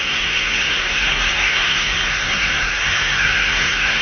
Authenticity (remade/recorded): remade